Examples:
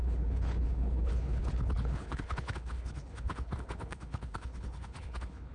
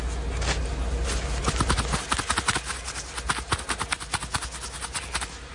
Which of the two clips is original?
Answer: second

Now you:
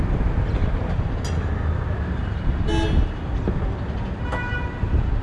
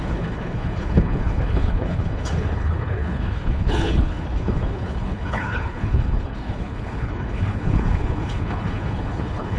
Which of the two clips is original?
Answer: first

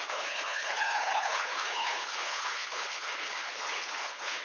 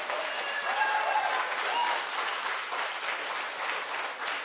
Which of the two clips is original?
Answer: second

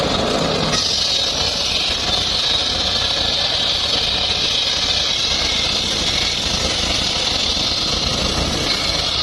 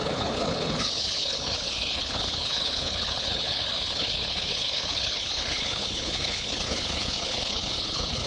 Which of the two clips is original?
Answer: first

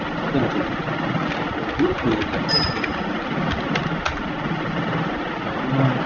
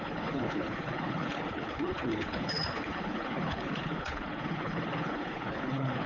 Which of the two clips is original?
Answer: first